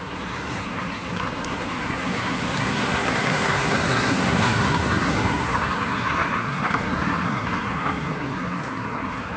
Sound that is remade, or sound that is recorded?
remade